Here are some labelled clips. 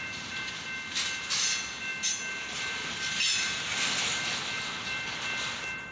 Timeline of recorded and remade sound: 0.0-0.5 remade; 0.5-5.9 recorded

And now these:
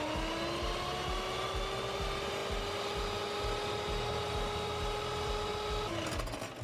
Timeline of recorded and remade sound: 0.0-6.6 recorded

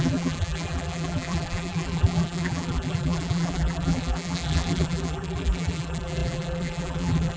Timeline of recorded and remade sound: 0.0-7.4 remade

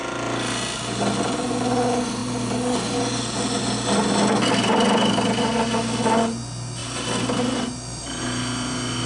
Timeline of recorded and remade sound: 0.0-9.1 recorded

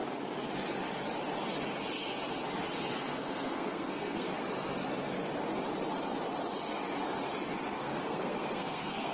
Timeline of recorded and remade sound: 0.0-3.0 recorded; 3.0-4.3 remade; 4.3-7.8 recorded; 7.8-9.1 remade

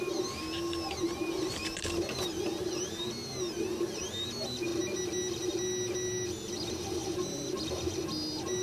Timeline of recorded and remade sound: 0.0-7.0 recorded; 7.0-7.8 remade; 7.8-8.6 recorded

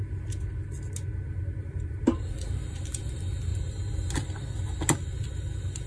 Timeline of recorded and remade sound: 0.0-1.6 recorded; 1.6-3.5 remade; 3.5-5.3 recorded; 5.3-5.9 remade